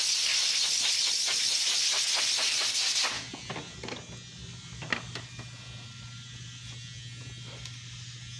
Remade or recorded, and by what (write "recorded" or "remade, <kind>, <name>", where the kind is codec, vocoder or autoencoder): recorded